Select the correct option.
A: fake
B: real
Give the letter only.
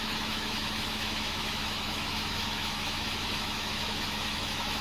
A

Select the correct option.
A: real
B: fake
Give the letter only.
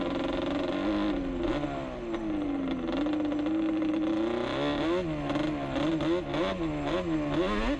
A